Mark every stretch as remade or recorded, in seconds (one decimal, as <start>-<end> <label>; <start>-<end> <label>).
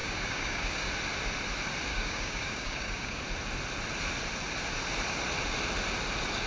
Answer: 0.0-0.9 remade; 0.9-1.9 recorded; 1.9-3.2 remade; 3.2-6.5 recorded